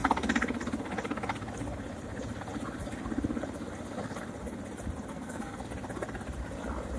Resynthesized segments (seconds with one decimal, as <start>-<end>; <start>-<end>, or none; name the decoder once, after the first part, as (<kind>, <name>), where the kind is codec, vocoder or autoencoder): 5.1-5.6 (codec, SNAC)